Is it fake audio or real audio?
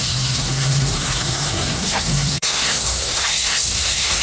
fake